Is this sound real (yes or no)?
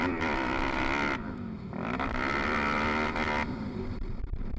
no